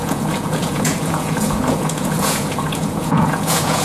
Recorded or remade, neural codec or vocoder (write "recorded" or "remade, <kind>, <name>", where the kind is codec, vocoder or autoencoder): remade, vocoder, Vocos